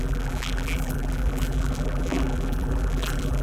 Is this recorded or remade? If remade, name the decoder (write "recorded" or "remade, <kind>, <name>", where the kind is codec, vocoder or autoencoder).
remade, vocoder, BigVGAN v2